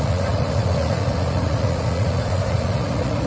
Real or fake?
fake